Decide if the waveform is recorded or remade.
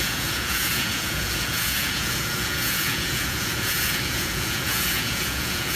remade